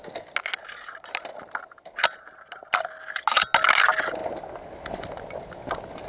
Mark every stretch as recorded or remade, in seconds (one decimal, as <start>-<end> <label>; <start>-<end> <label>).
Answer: 0.0-6.1 recorded